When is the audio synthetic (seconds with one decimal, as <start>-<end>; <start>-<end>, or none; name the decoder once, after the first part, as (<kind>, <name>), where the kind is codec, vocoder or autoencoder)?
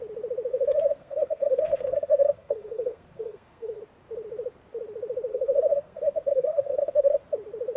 0.5-3.8 (codec, SNAC); 5.3-7.2